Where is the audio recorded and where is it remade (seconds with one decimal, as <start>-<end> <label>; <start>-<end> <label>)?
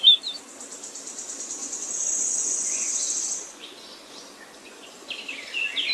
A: 0.0-1.6 recorded; 1.6-5.1 remade; 5.1-5.9 recorded